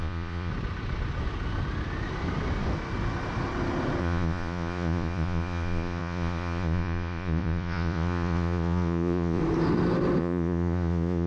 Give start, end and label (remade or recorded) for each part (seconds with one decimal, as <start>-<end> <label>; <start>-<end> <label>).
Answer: 0.0-0.5 remade; 0.5-4.0 recorded; 4.0-9.4 remade; 9.4-10.2 recorded; 10.2-11.3 remade